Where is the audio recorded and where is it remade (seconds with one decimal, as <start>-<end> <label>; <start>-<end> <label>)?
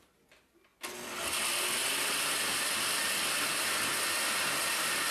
0.0-5.1 recorded